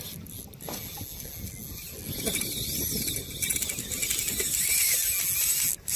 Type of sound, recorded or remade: recorded